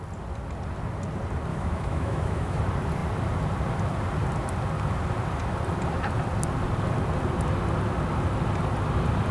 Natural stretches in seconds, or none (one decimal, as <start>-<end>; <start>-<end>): 0.0-1.5; 2.6-9.3